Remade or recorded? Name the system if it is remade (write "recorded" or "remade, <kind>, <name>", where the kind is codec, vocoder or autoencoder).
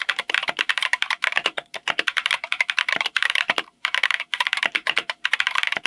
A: remade, vocoder, BigVGAN v2